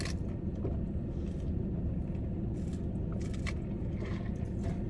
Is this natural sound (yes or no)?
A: yes